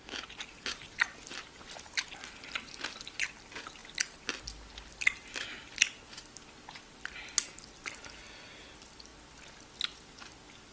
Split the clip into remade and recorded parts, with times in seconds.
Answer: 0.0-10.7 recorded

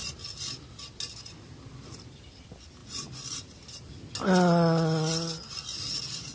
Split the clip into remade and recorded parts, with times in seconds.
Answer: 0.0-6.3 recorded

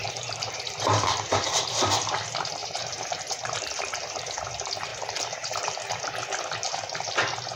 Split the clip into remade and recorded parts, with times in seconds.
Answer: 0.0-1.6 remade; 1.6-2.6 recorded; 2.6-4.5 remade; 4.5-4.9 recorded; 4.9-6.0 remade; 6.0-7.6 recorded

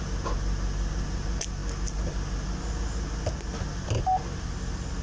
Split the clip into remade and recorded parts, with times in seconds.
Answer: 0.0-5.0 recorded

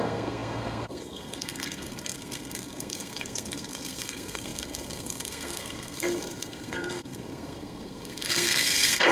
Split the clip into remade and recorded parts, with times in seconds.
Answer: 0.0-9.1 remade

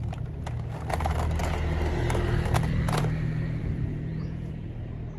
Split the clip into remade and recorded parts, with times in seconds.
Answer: 0.0-3.6 recorded; 3.6-4.5 remade; 4.5-5.2 recorded

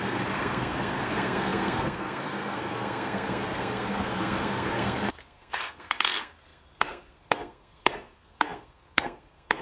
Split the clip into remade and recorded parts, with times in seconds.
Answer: 0.0-9.6 remade

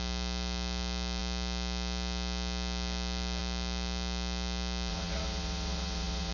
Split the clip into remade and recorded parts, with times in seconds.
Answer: 0.0-4.9 recorded; 4.9-6.3 remade